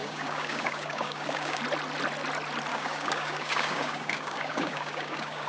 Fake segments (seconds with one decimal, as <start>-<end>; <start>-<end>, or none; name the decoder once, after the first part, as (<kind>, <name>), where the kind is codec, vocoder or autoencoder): 0.0-1.6 (codec, DAC); 2.7-5.5